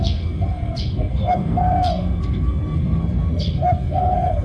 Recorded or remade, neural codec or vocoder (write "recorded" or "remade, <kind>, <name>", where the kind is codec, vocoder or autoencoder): remade, codec, SNAC